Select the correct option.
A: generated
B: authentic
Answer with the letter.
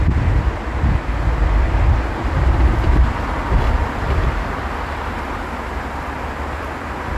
A